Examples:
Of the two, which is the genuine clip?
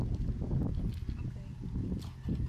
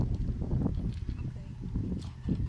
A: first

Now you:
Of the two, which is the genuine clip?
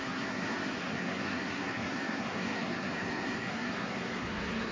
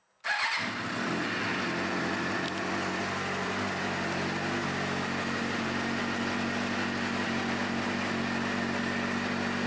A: second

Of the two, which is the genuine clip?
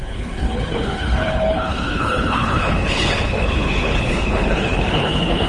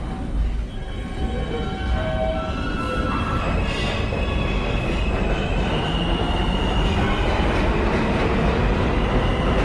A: second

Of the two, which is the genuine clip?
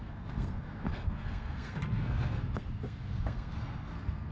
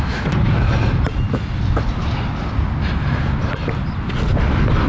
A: second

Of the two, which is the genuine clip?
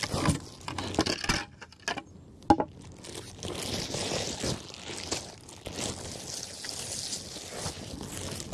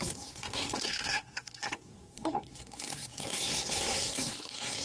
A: first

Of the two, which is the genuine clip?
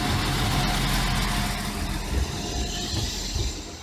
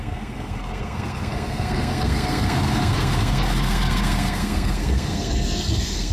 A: first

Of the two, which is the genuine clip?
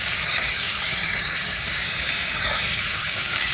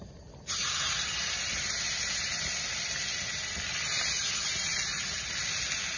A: second